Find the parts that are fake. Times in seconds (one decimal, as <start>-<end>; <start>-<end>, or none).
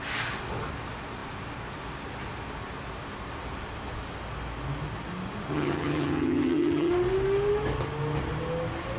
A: 5.5-6.9